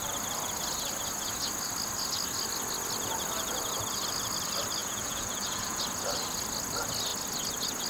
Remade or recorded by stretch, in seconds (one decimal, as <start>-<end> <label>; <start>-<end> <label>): 0.0-4.8 recorded; 4.8-5.8 remade; 5.8-7.9 recorded